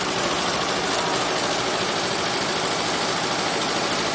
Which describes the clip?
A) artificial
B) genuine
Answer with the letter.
B